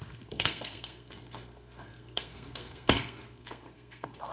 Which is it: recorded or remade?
remade